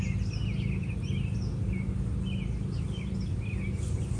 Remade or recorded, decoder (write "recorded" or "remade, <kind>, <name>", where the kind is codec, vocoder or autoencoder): recorded